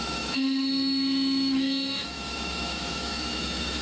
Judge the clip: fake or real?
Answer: fake